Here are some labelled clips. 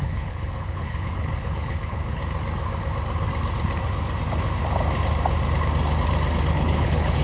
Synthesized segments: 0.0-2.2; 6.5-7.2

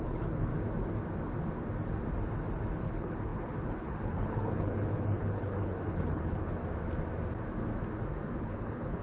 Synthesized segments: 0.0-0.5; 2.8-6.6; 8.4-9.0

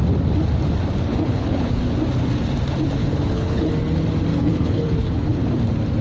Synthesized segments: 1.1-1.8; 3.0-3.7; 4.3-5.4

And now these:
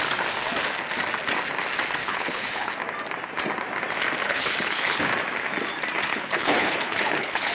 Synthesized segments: 2.0-2.7; 4.2-5.0; 6.1-7.5